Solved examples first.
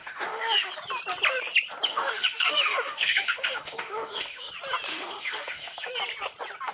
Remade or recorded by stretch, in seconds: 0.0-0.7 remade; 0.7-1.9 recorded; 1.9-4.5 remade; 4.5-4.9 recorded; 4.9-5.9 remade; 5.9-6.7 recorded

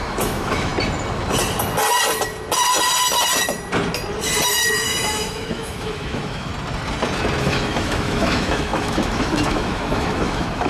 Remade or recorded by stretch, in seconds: 0.0-0.7 remade; 0.7-4.7 recorded; 4.7-6.5 remade; 6.5-7.4 recorded; 7.4-10.7 remade

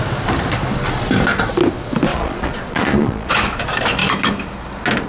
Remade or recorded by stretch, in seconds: 0.0-2.1 recorded; 2.1-3.3 remade; 3.3-5.1 recorded